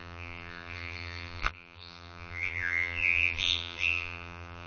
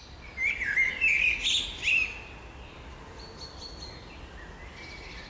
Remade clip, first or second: first